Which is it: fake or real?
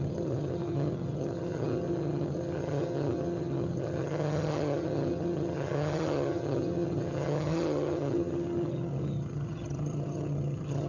fake